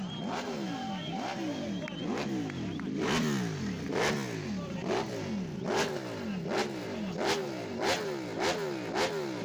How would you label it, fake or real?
real